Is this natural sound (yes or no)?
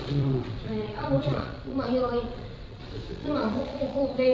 no